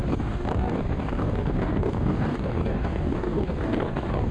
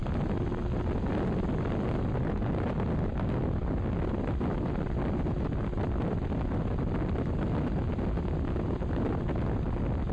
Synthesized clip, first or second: first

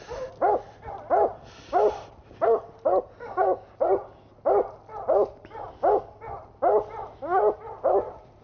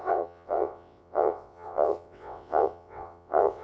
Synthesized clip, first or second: second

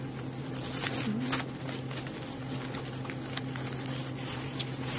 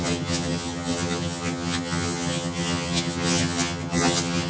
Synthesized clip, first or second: second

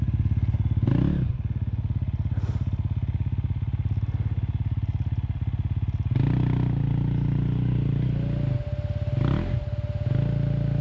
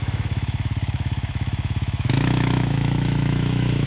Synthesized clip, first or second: second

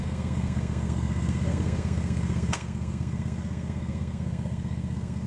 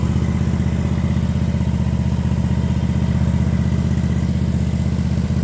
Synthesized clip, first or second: first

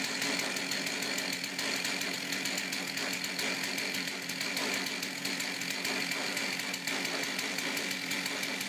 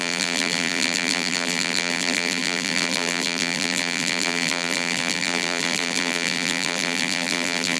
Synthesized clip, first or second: second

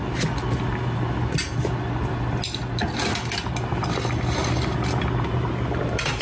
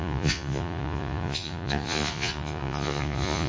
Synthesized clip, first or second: second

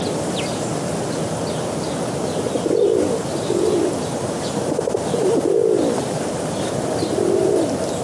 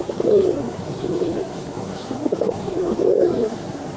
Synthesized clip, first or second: second